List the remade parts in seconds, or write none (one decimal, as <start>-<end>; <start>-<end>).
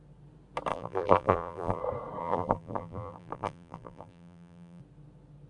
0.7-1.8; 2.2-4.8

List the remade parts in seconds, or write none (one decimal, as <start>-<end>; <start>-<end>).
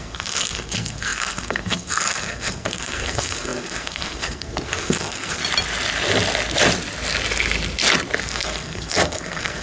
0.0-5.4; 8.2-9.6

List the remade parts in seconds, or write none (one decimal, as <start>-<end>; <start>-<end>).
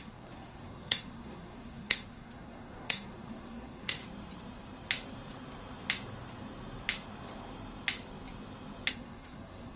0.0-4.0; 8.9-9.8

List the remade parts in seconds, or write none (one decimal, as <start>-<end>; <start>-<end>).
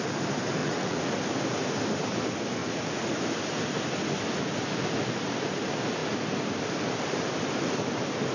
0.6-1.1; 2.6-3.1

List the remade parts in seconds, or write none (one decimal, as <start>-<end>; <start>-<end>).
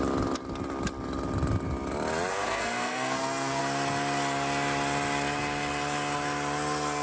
2.3-3.6